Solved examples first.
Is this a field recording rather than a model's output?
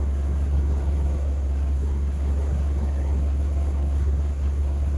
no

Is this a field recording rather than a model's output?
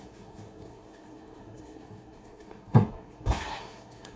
no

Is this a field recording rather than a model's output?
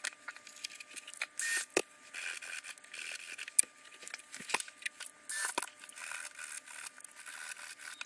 yes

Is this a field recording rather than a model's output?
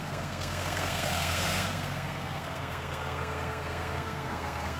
no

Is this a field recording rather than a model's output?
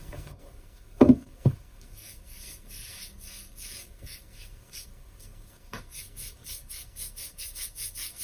no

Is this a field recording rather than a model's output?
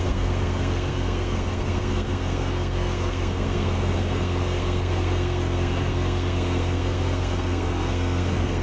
no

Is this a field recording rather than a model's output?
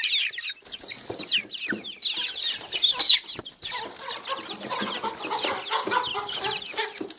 yes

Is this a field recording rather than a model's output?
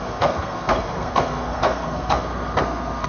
no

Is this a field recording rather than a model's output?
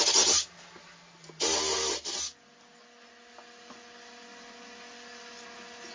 yes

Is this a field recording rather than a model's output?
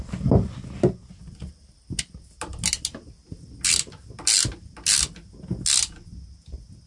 yes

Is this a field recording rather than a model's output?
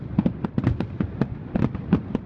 yes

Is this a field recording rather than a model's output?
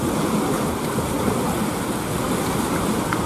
yes